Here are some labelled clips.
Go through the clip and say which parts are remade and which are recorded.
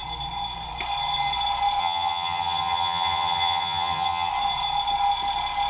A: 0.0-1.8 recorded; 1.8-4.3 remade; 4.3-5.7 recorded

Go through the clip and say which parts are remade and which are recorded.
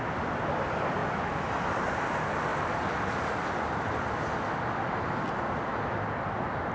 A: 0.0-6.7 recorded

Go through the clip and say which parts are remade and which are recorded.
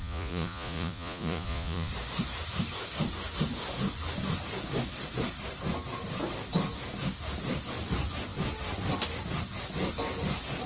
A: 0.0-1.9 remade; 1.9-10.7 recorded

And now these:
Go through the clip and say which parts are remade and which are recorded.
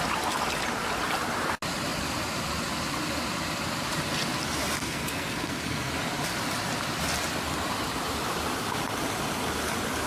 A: 0.0-4.8 recorded; 4.8-5.9 remade; 5.9-10.1 recorded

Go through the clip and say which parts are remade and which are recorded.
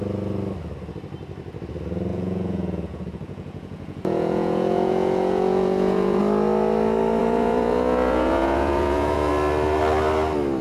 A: 0.0-2.1 recorded; 2.1-6.2 remade; 6.2-7.2 recorded; 7.2-9.3 remade; 9.3-10.6 recorded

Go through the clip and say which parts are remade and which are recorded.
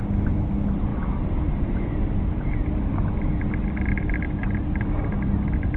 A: 0.0-5.8 recorded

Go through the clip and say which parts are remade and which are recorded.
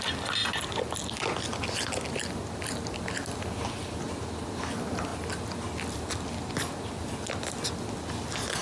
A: 0.0-8.6 recorded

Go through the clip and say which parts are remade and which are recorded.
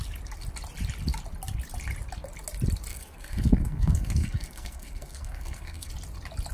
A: 0.0-2.9 recorded; 2.9-5.9 remade; 5.9-6.5 recorded